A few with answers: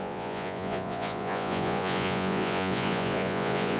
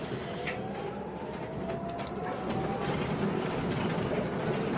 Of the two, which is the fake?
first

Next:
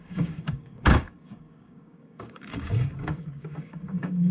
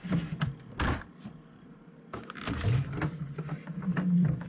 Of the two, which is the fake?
first